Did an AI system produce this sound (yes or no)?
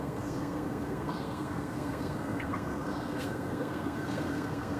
yes